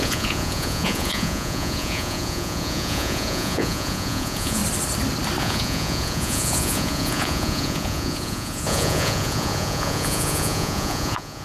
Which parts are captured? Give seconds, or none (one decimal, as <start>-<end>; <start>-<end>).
4.6-5.4

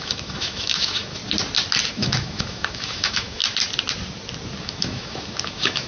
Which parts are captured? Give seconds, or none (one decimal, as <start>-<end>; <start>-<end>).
1.2-1.9; 3.4-4.6

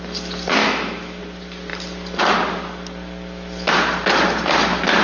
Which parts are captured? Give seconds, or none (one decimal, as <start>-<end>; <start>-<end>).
0.0-0.6; 1.2-5.0

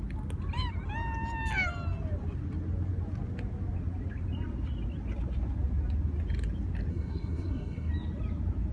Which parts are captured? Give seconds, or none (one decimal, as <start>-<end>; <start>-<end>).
0.0-6.9; 7.9-8.7

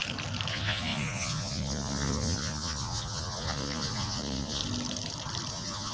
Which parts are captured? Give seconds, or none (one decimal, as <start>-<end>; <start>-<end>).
0.0-0.5; 4.6-5.5